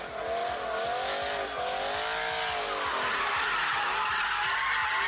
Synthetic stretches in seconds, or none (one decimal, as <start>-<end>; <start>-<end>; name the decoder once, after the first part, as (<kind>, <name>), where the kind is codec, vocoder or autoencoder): none